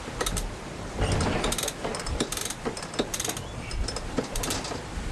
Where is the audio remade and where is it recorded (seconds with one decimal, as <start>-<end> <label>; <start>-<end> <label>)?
0.0-5.1 recorded